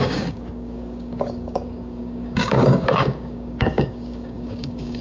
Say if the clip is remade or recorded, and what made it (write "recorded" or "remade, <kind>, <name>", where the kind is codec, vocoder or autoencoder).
remade, codec, DAC